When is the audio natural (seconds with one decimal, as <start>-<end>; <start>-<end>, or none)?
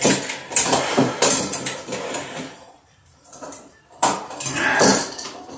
0.0-0.9; 4.3-5.6